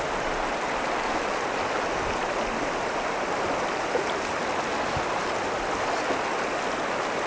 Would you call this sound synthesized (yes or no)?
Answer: no